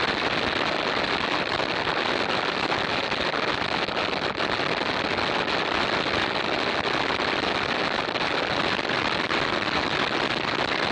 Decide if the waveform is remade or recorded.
recorded